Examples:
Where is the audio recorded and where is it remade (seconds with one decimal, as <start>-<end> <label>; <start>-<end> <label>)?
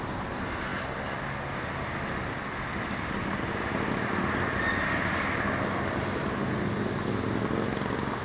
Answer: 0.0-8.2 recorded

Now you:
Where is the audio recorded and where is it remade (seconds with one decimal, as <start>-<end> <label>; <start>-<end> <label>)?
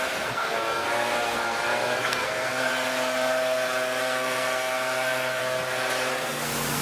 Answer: 0.0-2.7 remade; 2.7-4.0 recorded; 4.0-5.4 remade; 5.4-6.1 recorded; 6.1-6.8 remade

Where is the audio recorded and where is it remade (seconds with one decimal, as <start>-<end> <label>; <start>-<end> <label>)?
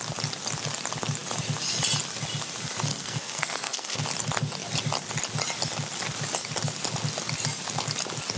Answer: 0.0-2.9 recorded; 2.9-4.0 remade; 4.0-8.4 recorded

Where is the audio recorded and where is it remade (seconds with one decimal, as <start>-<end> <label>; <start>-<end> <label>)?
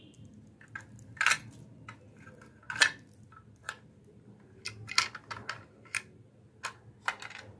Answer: 0.0-7.6 recorded